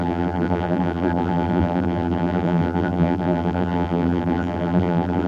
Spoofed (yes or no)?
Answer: yes